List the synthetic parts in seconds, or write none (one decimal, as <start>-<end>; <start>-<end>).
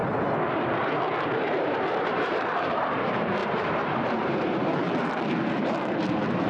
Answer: 1.2-6.5